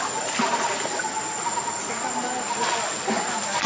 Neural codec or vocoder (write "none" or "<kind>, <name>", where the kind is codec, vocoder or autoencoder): none